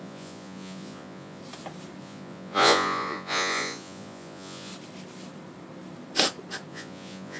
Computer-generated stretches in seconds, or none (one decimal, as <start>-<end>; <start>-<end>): 0.0-1.4; 2.0-4.7; 6.7-7.4

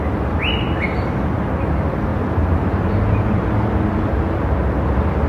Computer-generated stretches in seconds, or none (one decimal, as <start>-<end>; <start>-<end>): none

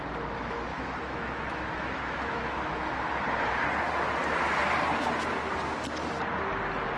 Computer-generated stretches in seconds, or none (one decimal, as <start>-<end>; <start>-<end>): 0.7-2.8

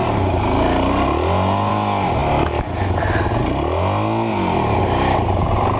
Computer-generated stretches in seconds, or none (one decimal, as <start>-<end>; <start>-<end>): none

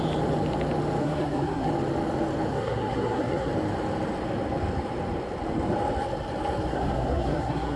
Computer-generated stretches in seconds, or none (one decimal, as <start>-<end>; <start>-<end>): 1.0-1.7; 2.5-3.5; 6.7-7.8

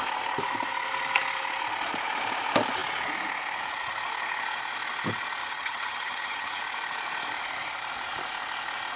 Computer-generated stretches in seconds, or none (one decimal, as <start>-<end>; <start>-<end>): 5.4-6.6

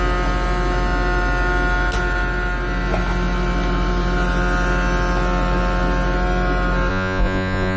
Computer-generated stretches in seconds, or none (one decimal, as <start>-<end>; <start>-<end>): 6.9-7.8